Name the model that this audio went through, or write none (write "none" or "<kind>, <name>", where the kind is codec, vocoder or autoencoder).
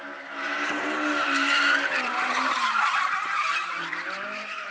vocoder, BigVGAN v2